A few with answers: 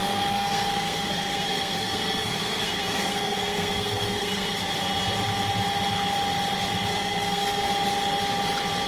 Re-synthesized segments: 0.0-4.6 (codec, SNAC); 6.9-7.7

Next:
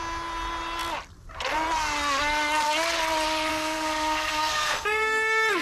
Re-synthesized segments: 3.5-5.6 (codec, SNAC)